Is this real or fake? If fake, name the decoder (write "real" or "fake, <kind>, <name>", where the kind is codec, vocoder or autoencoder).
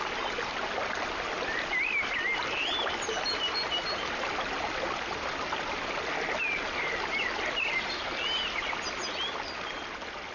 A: real